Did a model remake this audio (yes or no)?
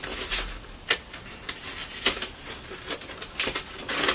no